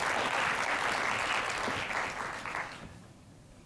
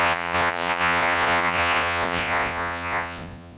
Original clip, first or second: first